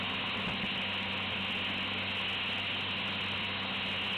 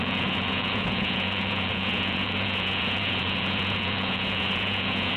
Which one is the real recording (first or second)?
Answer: first